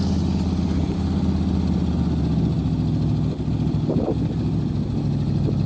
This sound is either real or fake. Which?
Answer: real